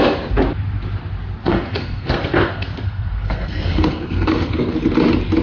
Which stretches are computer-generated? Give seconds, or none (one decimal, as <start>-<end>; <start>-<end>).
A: 1.4-4.6